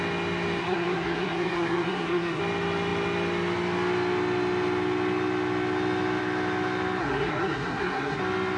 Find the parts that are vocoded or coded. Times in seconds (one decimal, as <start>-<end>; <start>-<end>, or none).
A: 0.6-2.4; 7.0-8.2